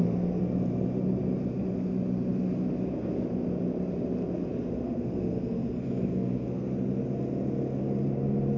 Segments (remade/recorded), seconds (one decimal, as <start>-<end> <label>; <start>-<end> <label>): 0.0-0.4 remade; 0.4-4.7 recorded; 4.7-6.7 remade; 6.7-8.6 recorded